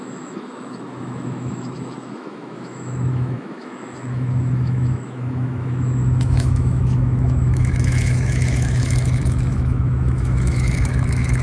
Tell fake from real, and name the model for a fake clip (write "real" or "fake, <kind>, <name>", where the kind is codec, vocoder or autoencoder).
fake, autoencoder, DAC-VAE